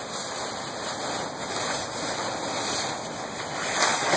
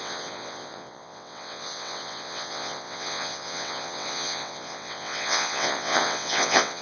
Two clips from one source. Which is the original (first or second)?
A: first